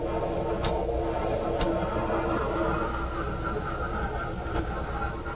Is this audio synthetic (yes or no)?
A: no